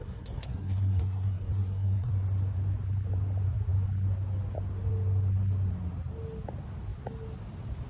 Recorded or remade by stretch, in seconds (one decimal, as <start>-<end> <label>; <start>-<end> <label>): 0.0-2.1 remade; 2.1-7.9 recorded